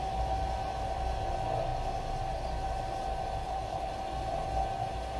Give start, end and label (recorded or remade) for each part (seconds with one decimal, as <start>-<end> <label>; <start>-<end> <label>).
0.0-3.4 recorded; 3.4-3.9 remade; 3.9-5.2 recorded